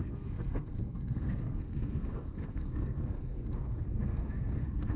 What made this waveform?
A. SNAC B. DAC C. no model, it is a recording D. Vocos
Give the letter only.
A